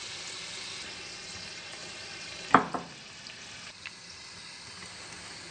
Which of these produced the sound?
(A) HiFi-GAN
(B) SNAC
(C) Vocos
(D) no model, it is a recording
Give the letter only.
D